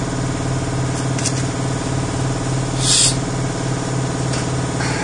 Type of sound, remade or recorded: recorded